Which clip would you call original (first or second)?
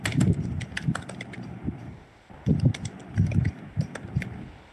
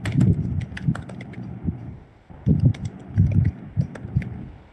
second